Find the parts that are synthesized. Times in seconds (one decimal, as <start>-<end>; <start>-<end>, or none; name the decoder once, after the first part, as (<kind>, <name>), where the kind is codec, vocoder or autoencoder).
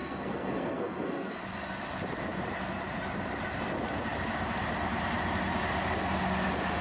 0.0-1.4 (codec, SNAC)